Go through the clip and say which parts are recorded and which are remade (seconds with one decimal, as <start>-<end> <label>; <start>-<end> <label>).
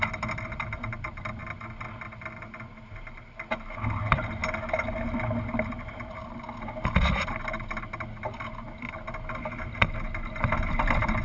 0.0-11.2 recorded